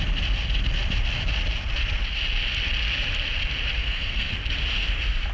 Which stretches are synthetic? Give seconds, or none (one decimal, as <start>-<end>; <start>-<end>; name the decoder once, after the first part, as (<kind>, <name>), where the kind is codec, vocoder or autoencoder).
3.8-4.3 (codec, SNAC)